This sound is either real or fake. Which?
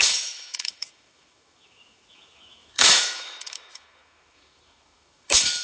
fake